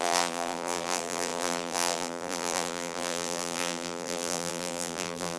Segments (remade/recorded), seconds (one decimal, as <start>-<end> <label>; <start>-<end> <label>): 0.0-5.4 remade